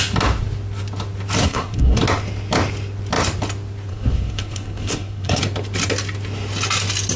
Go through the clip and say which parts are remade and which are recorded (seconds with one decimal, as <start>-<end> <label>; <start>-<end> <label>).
0.0-1.4 recorded; 1.4-2.0 remade; 2.0-3.9 recorded; 3.9-5.4 remade; 5.4-7.2 recorded